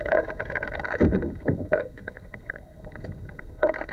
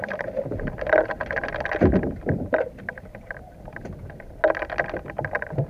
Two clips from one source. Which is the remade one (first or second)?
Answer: first